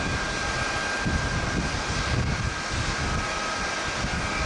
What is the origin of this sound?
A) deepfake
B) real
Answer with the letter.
B